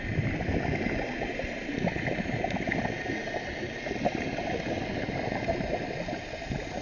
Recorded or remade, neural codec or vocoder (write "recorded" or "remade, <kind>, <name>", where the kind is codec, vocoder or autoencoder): recorded